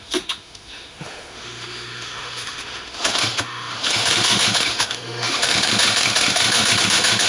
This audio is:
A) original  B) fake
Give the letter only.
B